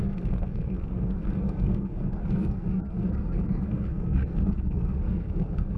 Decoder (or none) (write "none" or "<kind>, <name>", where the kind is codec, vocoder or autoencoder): codec, SNAC